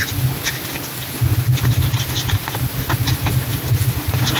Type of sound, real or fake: real